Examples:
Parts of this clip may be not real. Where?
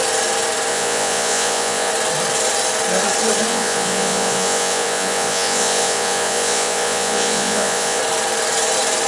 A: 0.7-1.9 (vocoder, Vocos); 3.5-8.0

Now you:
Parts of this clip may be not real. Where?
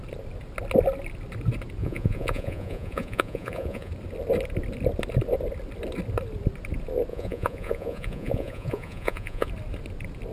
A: 1.8-3.9 (vocoder, Vocos); 7.1-9.5